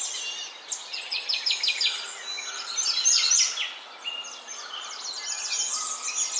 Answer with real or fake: real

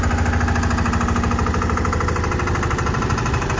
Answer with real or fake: real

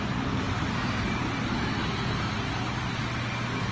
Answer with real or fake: real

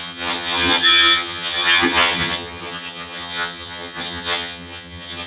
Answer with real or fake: fake